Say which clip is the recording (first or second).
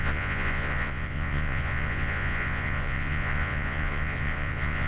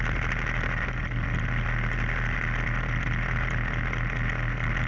second